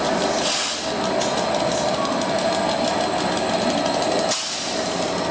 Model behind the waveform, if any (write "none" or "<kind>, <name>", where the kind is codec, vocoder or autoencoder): none